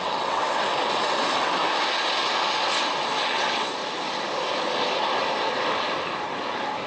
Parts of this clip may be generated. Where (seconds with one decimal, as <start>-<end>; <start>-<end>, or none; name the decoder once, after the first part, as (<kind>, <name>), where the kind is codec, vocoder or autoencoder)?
0.0-1.6 (vocoder, WaveNeXt); 3.2-3.8